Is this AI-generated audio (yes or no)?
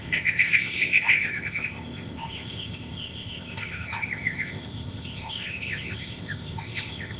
yes